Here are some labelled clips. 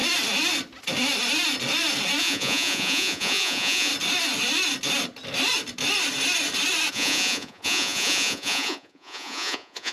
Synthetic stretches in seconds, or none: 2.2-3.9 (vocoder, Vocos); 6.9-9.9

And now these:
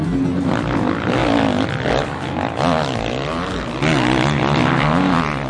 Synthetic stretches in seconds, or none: none

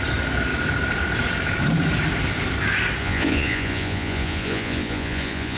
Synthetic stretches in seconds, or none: 3.0-5.6 (vocoder, Vocos)